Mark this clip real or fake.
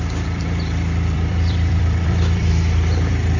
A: fake